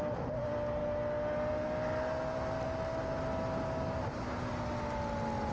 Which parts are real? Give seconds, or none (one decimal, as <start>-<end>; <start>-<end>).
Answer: 0.0-5.5